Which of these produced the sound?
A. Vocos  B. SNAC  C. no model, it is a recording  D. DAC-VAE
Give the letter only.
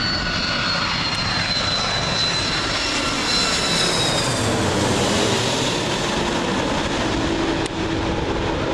C